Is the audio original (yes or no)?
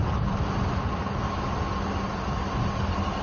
yes